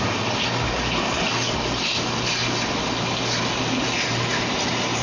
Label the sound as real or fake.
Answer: real